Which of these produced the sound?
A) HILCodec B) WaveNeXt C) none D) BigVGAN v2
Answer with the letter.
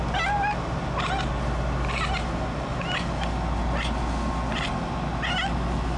C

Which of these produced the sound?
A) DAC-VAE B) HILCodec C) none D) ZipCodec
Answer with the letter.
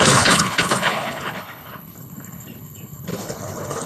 B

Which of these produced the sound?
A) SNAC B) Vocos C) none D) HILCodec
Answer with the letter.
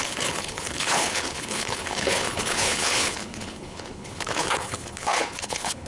D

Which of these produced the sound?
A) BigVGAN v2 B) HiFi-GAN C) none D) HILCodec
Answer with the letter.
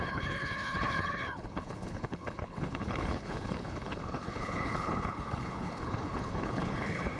D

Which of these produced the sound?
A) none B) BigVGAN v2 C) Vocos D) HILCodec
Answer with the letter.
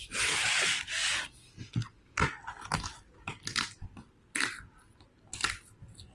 A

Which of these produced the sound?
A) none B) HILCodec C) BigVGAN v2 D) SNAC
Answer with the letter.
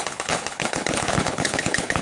B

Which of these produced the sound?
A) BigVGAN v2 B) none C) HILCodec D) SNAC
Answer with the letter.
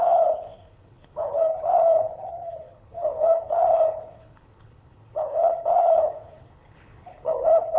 C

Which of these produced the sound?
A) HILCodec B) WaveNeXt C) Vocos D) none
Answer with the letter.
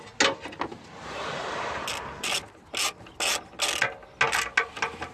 D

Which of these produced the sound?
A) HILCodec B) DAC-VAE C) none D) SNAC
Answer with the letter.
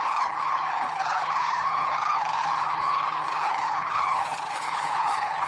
A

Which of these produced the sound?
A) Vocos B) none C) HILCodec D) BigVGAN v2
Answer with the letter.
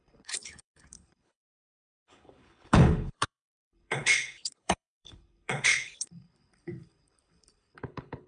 C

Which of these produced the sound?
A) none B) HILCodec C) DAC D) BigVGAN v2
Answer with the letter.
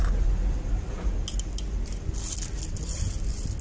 A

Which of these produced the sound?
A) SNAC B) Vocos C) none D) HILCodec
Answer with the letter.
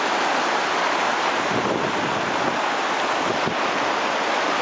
C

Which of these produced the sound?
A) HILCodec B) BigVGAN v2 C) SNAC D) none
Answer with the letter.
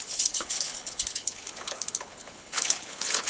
A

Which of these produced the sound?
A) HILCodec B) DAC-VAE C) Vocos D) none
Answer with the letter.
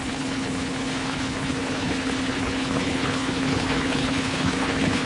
A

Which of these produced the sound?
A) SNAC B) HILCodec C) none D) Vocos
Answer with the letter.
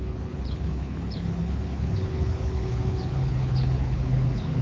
B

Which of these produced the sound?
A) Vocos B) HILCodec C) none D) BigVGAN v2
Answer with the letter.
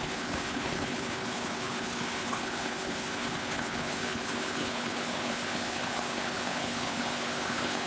B